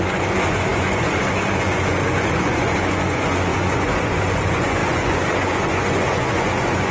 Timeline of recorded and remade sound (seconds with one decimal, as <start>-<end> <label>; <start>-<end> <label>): 0.0-6.9 remade